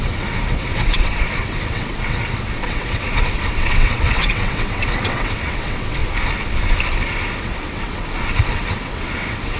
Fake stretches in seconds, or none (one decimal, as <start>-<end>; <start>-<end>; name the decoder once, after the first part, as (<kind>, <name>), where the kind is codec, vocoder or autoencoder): 0.0-6.0 (vocoder, WaveNeXt); 6.8-9.6